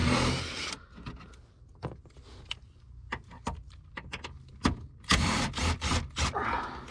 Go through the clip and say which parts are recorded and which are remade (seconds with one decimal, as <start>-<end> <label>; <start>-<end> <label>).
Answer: 0.0-6.9 recorded